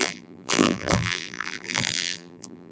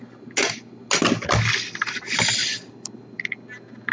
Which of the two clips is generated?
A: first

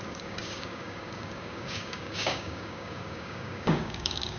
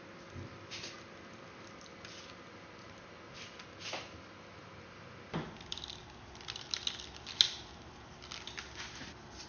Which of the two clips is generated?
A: first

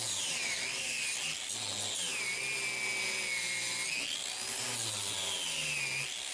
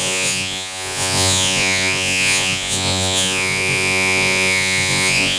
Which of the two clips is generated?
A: second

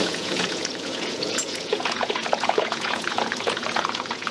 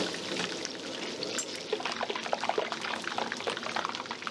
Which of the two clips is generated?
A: first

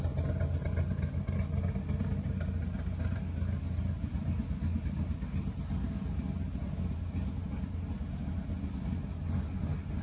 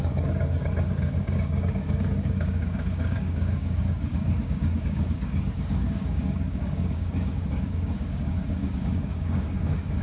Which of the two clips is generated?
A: second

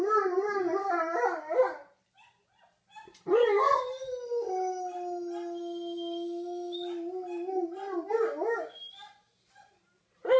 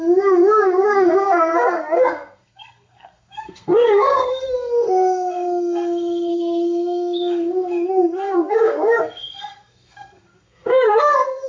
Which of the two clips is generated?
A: second